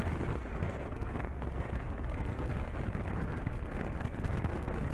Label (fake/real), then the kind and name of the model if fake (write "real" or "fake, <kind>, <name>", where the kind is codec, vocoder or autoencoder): fake, codec, SNAC